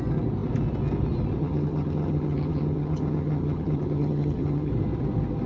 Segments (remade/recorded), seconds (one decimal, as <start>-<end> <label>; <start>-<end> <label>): 0.0-1.4 recorded; 1.4-4.7 remade; 4.7-5.5 recorded